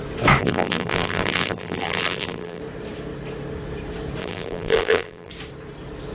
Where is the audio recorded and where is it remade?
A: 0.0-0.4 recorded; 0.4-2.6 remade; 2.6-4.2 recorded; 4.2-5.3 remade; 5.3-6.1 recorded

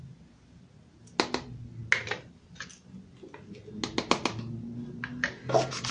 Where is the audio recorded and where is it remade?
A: 0.0-5.9 recorded